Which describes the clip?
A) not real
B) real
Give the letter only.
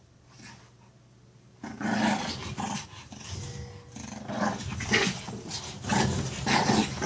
B